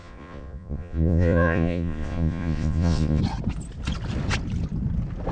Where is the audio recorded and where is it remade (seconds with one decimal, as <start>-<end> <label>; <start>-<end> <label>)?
0.0-3.2 remade; 3.2-5.3 recorded